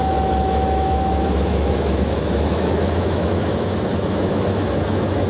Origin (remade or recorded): remade